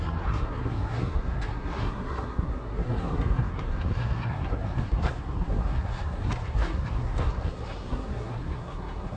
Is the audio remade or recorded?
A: remade